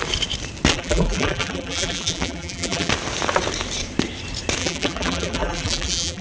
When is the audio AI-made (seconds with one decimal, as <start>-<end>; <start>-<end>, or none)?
0.7-2.9; 4.6-6.2